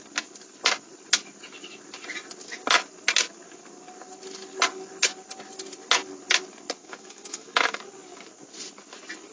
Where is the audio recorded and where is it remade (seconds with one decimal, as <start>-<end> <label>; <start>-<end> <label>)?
0.0-6.8 recorded; 6.8-7.8 remade; 7.8-9.3 recorded